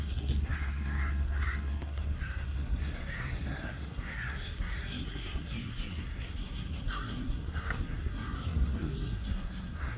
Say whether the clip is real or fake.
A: fake